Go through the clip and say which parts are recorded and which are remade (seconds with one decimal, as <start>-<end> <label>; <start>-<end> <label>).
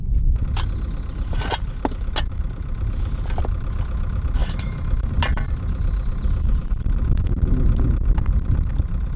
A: 0.0-4.4 recorded; 4.4-5.1 remade; 5.1-9.2 recorded